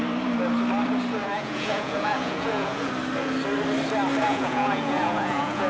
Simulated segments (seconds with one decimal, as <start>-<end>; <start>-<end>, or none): 1.2-2.9; 4.2-5.7